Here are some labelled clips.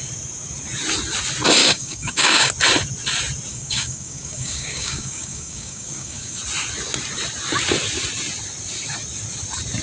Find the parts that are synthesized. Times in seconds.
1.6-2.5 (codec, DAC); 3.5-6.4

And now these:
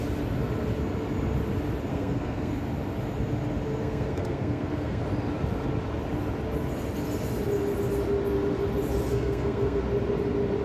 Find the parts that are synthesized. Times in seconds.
1.9-2.5 (codec, SNAC); 3.7-5.0; 9.1-9.8